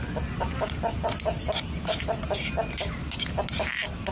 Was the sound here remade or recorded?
recorded